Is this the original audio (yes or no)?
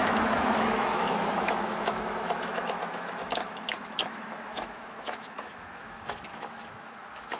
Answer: no